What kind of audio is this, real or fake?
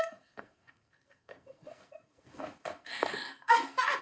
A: fake